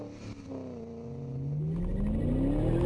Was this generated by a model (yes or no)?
no